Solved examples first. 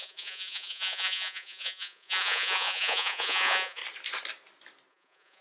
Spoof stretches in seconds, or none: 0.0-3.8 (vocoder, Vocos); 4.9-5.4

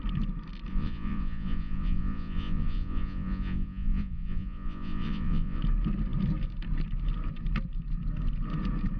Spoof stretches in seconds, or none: 0.7-5.6 (vocoder, Vocos)

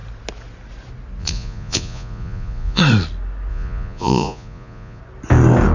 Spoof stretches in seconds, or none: 1.2-2.8 (vocoder, Vocos); 3.5-5.0

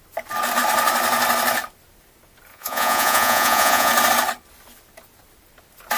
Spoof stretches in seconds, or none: 2.5-3.9 (vocoder, Vocos)

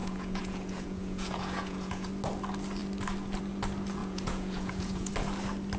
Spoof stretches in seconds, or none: 0.0-2.1 (vocoder, Vocos); 4.0-5.1

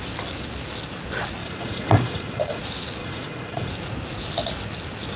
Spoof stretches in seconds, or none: 1.4-2.6 (vocoder, Vocos); 3.0-3.7